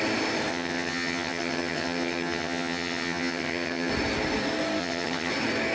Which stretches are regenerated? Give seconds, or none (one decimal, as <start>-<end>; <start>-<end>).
0.5-3.9; 4.8-5.3